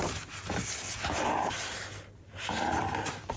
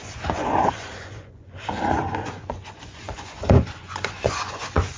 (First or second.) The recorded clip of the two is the first